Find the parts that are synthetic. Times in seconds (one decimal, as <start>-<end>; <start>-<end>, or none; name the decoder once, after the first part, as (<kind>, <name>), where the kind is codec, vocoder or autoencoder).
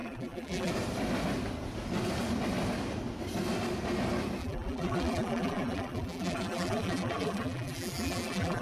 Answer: 0.0-0.7 (vocoder, BigVGAN v2); 4.4-8.6